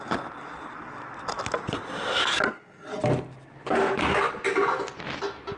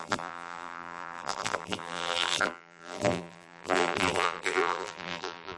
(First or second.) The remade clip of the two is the second